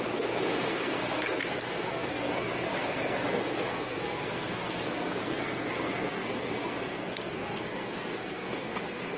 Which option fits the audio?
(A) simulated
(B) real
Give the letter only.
A